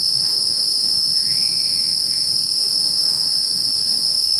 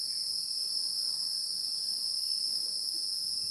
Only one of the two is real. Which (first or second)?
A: second